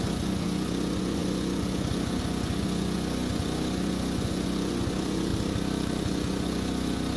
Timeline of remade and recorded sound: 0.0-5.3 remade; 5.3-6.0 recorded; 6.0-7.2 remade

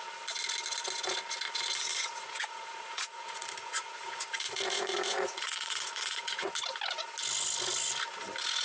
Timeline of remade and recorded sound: 0.0-1.9 recorded; 1.9-6.5 remade; 6.5-8.6 recorded